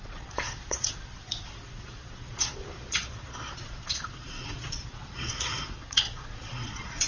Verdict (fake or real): fake